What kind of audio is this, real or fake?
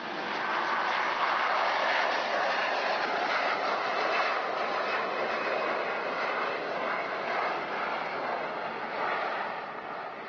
real